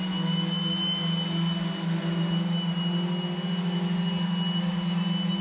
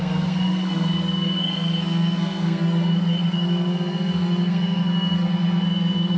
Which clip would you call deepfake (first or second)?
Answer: second